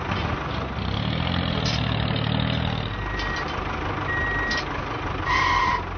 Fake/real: real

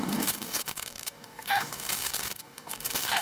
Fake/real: fake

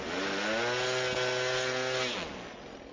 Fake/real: real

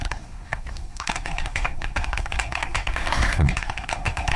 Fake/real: fake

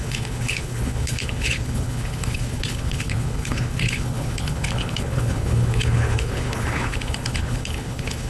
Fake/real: fake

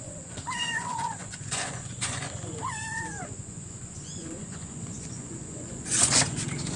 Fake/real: fake